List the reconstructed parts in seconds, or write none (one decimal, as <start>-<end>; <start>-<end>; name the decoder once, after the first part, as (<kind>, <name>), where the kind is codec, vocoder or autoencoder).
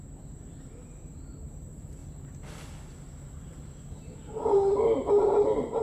0.0-2.0 (vocoder, BigVGAN v2); 3.8-5.8